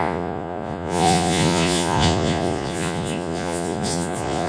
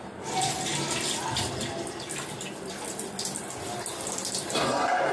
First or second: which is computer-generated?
first